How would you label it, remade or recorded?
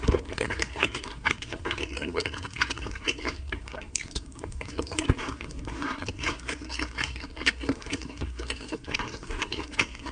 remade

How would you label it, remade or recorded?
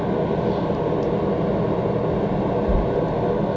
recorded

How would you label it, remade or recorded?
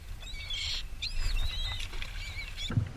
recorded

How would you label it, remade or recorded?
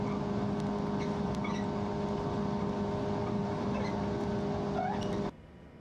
recorded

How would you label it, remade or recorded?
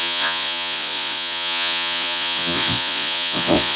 remade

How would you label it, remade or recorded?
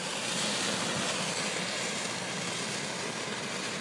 recorded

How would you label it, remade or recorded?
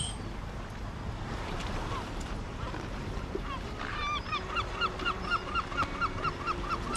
remade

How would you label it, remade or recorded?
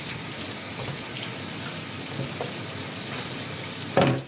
recorded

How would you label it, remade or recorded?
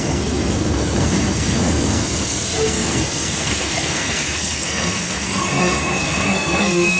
remade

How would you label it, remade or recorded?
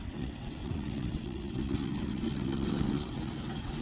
remade